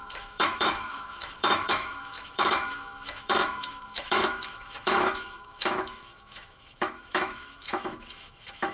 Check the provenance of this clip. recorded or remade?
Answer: remade